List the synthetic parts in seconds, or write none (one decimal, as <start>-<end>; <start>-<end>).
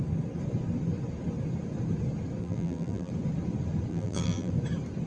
2.4-3.1; 3.9-4.5